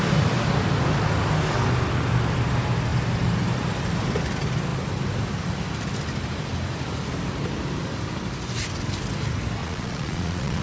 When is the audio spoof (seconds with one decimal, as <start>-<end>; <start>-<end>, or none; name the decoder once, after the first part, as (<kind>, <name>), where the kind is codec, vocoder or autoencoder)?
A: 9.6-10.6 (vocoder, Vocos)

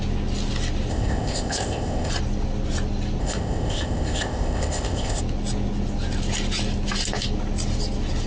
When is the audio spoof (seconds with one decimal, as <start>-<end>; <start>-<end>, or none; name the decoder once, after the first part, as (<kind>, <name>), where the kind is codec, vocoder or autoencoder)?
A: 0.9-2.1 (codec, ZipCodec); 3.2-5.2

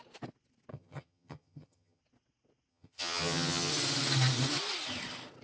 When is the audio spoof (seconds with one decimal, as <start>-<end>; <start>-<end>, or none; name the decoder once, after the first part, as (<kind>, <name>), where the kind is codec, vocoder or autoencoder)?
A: 0.7-2.0 (vocoder, HiFi-GAN); 2.7-3.7

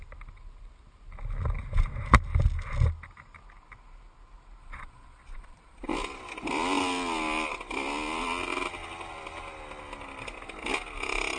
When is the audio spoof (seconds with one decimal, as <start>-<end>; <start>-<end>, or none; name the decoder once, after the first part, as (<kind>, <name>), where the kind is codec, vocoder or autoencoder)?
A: 4.6-5.9 (vocoder, Vocos)